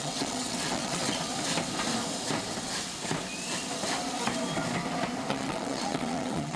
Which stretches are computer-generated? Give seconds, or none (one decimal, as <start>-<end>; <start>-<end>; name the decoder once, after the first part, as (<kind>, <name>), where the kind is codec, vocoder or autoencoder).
0.0-1.3 (vocoder, WaveNeXt); 5.3-6.6